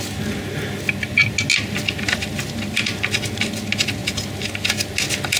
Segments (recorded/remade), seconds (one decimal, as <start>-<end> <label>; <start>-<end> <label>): 0.0-5.4 recorded